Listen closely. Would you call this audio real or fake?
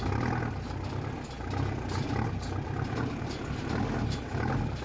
real